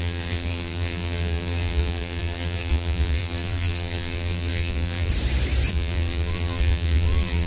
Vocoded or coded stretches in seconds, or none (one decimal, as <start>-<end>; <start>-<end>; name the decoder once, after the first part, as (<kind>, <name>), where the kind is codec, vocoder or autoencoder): 0.0-5.1 (vocoder, BigVGAN v2); 5.7-7.5